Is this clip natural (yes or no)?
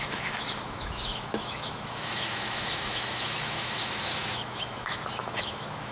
no